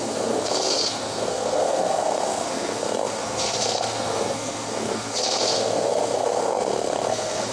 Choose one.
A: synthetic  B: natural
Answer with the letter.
A